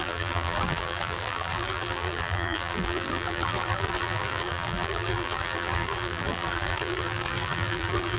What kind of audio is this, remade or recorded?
remade